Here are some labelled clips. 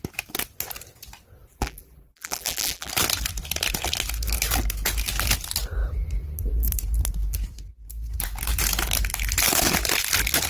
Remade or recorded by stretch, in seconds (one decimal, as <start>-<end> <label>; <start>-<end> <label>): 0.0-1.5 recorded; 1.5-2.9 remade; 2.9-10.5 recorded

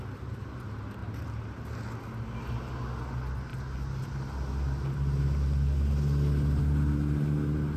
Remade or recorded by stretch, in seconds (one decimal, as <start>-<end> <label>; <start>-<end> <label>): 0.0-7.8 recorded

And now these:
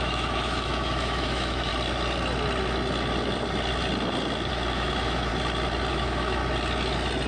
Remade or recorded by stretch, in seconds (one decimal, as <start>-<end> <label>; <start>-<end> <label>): 0.0-1.7 remade; 1.7-4.5 recorded; 4.5-5.3 remade; 5.3-5.9 recorded; 5.9-6.4 remade; 6.4-7.3 recorded

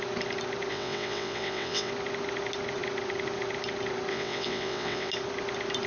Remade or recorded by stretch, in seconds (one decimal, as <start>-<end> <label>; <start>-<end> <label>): 0.0-0.7 recorded; 0.7-1.9 remade; 1.9-4.1 recorded; 4.1-5.1 remade; 5.1-5.9 recorded